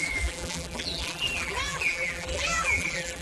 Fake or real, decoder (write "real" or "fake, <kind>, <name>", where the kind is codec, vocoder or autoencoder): fake, vocoder, BigVGAN v2